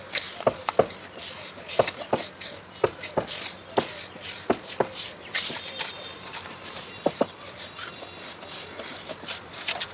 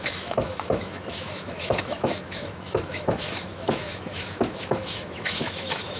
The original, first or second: first